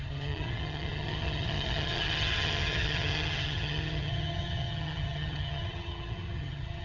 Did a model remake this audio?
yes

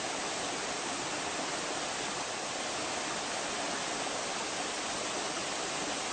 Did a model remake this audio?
no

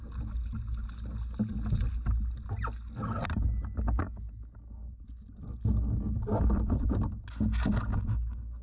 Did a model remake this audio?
no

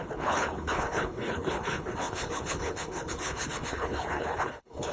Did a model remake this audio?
yes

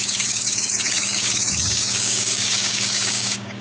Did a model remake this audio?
yes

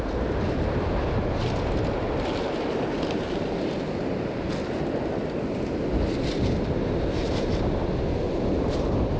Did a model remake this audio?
no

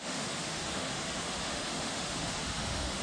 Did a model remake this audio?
yes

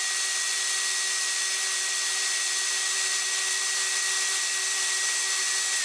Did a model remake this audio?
no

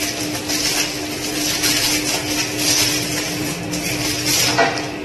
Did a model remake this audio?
no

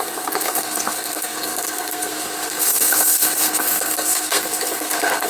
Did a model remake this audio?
yes